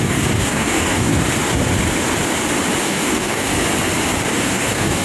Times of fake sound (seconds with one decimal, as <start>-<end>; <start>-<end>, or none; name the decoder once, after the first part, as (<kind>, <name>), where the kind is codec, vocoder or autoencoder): 0.0-1.1 (codec, DAC); 2.8-3.5; 4.2-5.0